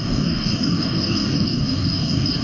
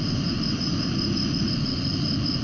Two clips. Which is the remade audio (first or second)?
first